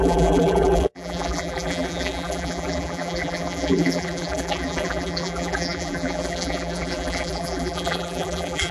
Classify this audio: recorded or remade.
remade